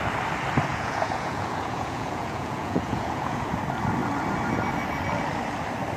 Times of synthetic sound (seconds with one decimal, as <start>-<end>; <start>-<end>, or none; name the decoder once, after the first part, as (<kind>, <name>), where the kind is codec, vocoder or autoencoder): 0.7-3.6 (vocoder, Vocos)